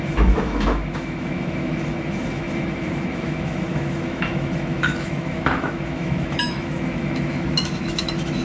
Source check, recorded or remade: remade